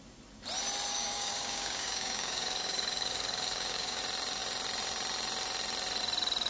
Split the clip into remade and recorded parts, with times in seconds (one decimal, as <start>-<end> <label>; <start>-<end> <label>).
0.0-0.9 recorded; 0.9-4.0 remade; 4.0-6.5 recorded